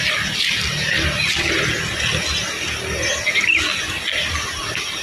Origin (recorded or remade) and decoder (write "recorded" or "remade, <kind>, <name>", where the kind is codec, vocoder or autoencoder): recorded